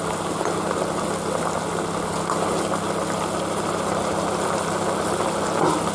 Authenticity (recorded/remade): recorded